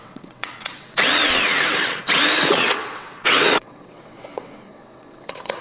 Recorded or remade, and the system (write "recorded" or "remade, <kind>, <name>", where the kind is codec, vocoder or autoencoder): remade, vocoder, WaveNeXt